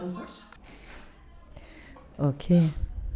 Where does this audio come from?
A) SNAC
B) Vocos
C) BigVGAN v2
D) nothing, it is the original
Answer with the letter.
D